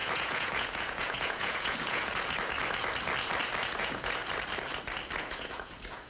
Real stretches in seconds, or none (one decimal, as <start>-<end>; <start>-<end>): 2.1-3.8; 4.2-5.2